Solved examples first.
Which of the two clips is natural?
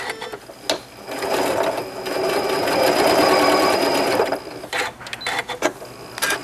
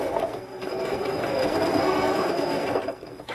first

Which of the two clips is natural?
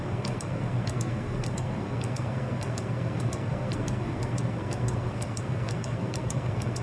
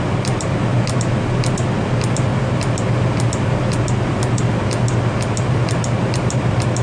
second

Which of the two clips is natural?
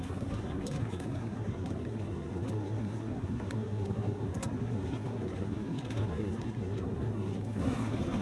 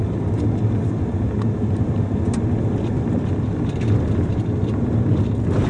second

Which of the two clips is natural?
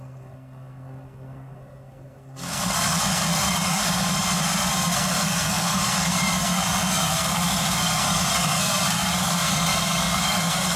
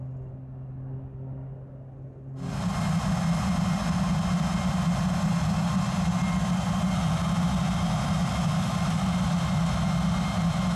second